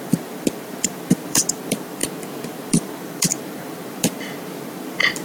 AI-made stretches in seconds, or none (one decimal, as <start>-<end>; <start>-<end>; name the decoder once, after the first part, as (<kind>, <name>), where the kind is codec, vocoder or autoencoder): 0.0-5.2 (vocoder, BigVGAN v2)